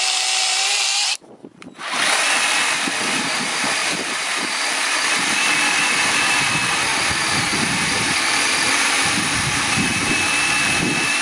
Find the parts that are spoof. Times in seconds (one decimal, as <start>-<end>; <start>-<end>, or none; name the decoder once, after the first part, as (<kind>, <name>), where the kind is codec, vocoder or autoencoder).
none